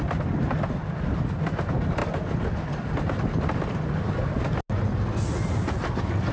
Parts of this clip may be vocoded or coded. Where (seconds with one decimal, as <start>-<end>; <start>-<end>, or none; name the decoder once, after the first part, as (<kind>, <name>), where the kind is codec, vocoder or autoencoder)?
none